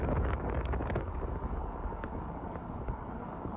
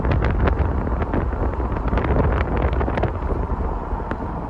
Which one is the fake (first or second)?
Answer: first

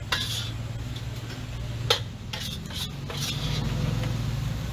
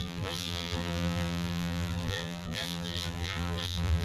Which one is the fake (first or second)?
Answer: second